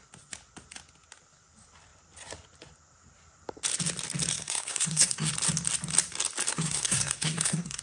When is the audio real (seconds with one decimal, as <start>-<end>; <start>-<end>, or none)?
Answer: 0.0-4.3; 5.3-6.5